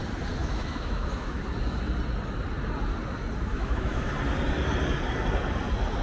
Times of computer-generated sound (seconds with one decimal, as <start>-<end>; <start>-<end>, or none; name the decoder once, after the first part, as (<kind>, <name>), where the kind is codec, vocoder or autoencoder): 0.4-1.4 (autoencoder, DAC-VAE); 3.5-4.1